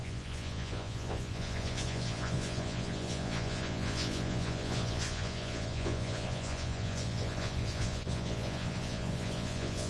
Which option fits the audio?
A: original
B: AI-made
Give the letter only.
B